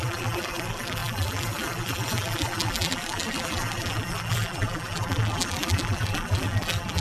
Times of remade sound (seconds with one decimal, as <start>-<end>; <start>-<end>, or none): 0.0-7.0